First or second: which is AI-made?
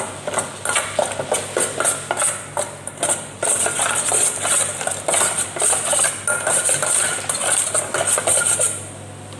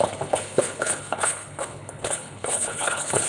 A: second